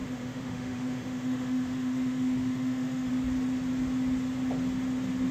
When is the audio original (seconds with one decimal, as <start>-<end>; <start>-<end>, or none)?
3.1-5.3